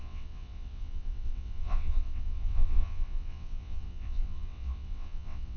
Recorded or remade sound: remade